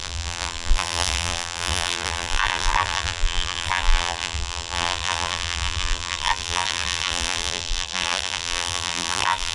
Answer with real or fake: fake